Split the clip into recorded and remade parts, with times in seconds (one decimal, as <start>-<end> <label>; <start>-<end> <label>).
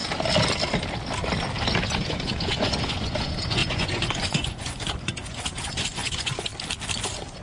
0.0-1.8 recorded; 1.8-6.5 remade; 6.5-7.0 recorded; 7.0-7.4 remade